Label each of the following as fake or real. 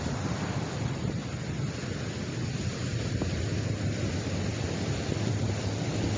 real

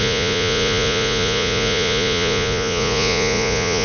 fake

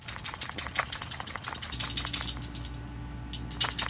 real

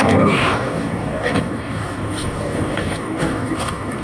fake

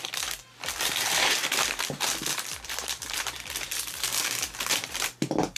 fake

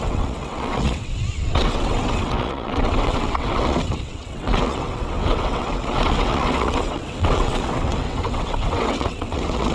fake